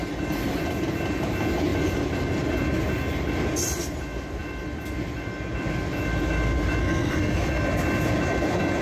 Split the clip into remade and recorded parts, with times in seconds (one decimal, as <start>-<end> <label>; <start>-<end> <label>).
0.0-6.8 recorded; 6.8-7.6 remade; 7.6-8.8 recorded